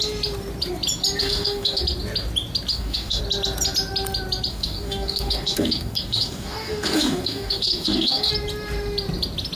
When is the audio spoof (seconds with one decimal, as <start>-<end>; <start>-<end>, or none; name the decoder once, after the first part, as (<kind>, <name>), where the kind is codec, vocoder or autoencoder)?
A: 1.2-1.8 (codec, DAC); 2.7-3.2; 4.5-8.3

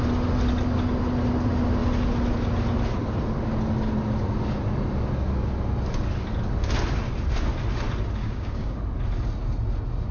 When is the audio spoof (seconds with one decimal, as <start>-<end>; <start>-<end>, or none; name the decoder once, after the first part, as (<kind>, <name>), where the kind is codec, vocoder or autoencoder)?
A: 8.2-8.8 (codec, DAC)

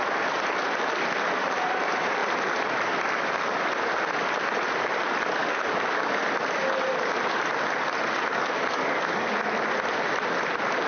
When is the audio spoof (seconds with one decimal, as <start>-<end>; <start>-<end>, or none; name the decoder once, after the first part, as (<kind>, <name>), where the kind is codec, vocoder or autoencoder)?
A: 5.4-6.2 (codec, DAC); 8.3-9.3